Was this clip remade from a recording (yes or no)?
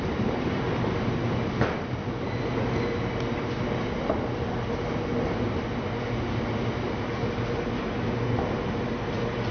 no